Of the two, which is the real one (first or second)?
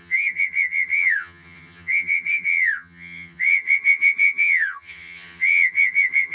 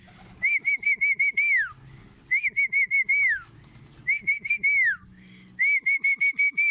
second